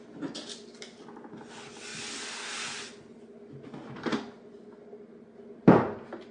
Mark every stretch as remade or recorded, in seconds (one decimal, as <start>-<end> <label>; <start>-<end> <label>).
0.0-6.3 recorded